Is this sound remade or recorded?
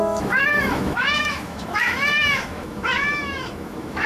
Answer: remade